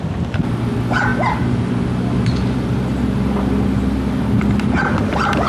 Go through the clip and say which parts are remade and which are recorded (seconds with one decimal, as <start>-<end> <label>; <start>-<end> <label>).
0.0-5.5 recorded